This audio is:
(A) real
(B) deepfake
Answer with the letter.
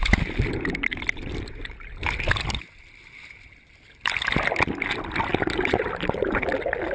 A